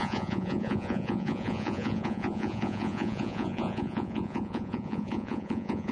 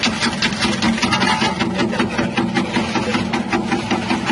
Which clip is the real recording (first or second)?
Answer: second